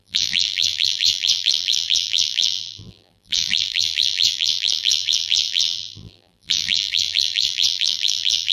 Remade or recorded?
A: remade